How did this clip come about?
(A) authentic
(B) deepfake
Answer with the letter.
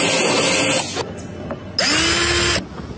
A